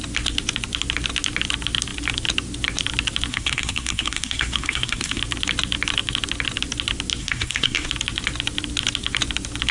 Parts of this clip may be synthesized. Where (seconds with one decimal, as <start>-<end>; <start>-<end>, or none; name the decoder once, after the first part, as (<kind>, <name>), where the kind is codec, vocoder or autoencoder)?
3.3-5.2 (codec, SNAC); 7.2-7.9